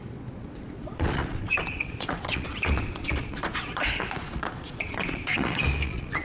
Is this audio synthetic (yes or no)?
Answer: yes